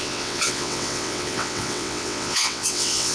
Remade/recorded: remade